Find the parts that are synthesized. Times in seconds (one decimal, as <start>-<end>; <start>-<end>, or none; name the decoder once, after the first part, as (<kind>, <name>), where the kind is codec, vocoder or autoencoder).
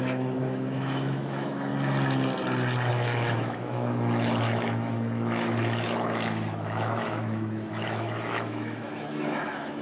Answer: 0.0-1.7 (autoencoder, DAC-VAE); 2.9-9.8